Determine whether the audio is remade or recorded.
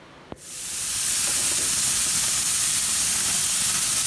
recorded